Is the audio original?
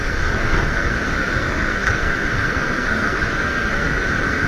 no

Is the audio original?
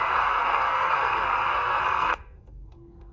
no